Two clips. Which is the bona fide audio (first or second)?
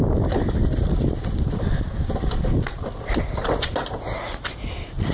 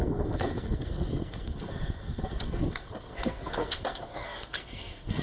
first